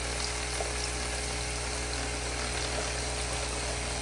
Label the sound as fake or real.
real